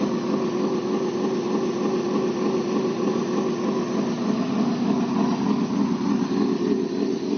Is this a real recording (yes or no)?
yes